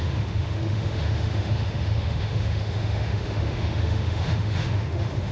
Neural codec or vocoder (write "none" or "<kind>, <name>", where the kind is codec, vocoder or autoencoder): autoencoder, DAC-VAE